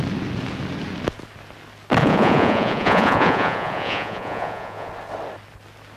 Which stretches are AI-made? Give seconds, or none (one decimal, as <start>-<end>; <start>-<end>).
2.0-4.9